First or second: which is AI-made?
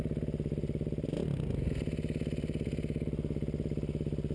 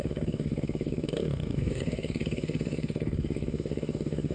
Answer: second